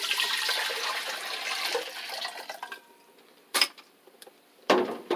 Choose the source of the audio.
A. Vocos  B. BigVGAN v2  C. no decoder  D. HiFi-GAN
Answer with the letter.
B